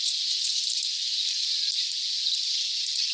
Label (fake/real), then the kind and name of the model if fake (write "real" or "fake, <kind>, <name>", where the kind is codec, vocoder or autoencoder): fake, vocoder, BigVGAN v2